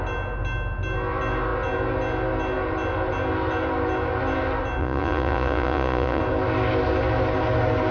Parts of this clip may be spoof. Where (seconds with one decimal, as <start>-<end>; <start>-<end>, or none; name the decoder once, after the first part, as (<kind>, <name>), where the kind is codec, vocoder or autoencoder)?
4.8-6.2 (vocoder, Vocos)